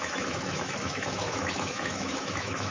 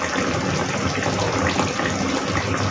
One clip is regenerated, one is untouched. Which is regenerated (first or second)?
first